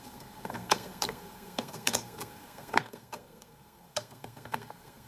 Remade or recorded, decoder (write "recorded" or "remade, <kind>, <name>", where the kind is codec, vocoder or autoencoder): remade, codec, SNAC